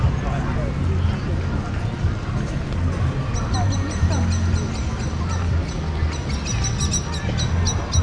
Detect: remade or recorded recorded